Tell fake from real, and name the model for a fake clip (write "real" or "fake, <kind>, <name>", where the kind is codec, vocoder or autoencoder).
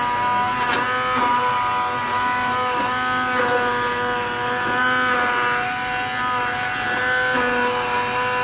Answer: real